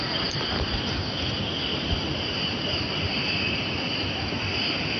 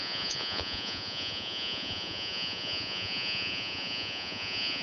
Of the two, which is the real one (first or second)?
first